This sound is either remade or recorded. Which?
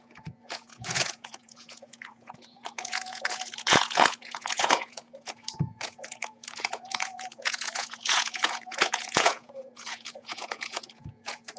remade